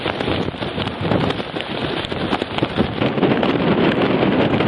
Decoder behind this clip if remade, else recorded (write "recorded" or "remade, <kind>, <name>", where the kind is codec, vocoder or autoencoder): recorded